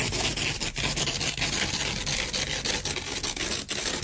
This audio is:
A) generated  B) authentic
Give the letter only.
B